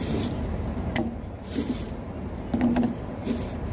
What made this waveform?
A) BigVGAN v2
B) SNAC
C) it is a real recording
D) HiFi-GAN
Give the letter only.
A